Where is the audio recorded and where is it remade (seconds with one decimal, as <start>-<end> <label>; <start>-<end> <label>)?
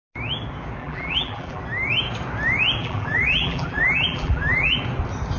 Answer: 0.0-0.8 recorded; 0.8-1.6 remade; 1.6-2.8 recorded; 2.8-4.8 remade; 4.8-5.4 recorded